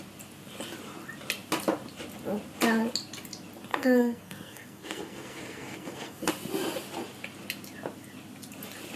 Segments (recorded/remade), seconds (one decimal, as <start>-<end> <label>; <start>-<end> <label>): 0.0-3.7 recorded; 3.7-6.3 remade; 6.3-9.0 recorded